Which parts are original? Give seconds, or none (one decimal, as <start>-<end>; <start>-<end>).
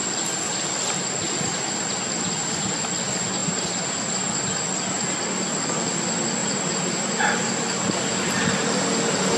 0.0-3.4; 4.1-6.4; 7.2-9.4